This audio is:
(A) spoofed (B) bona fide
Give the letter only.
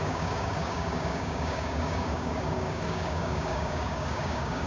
A